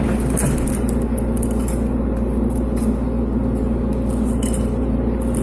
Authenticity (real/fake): fake